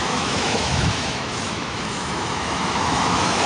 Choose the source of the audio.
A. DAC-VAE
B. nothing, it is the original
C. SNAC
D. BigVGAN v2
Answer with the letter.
A